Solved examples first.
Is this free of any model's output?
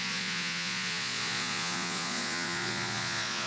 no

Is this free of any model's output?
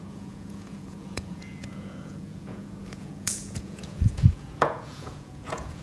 no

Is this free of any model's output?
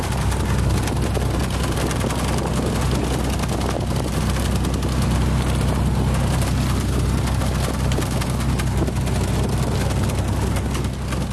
yes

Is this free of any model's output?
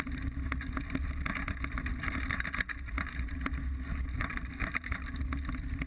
yes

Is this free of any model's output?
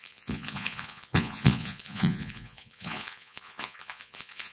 no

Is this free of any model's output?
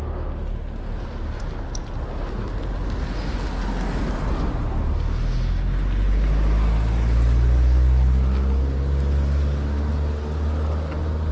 yes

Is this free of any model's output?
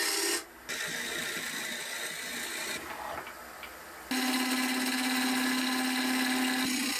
yes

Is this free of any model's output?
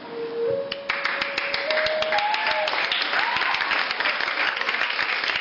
yes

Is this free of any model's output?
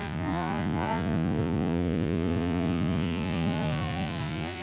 no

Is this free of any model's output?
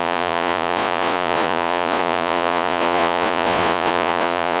no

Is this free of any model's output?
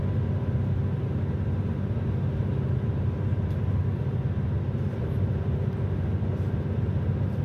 yes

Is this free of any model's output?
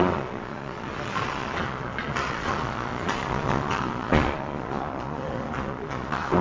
no